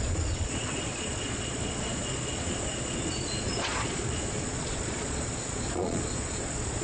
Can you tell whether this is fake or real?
fake